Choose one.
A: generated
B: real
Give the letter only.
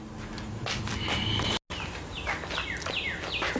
B